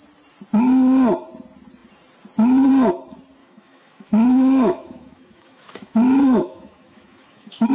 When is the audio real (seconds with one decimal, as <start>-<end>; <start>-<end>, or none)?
0.0-3.4